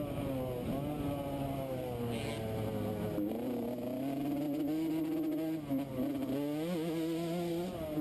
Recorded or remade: recorded